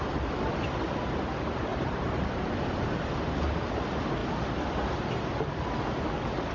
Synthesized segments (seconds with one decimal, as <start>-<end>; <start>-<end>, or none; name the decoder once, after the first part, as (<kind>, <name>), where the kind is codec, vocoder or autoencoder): 1.7-2.5 (vocoder, BigVGAN v2)